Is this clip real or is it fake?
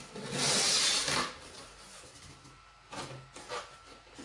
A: real